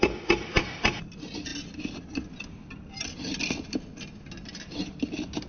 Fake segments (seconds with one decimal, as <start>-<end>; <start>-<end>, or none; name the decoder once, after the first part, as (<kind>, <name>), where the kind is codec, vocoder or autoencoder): none